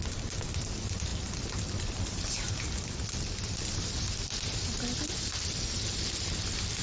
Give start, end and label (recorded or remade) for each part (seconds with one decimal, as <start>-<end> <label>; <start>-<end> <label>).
0.0-1.1 recorded; 1.1-5.2 remade; 5.2-6.8 recorded